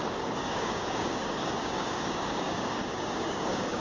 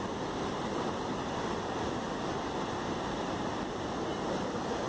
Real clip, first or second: second